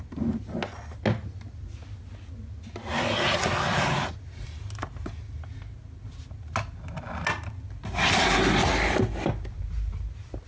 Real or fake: real